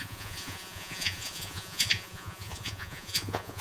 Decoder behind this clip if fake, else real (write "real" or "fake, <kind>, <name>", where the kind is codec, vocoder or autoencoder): fake, vocoder, Vocos